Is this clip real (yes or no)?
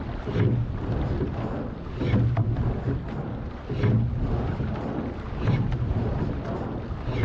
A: yes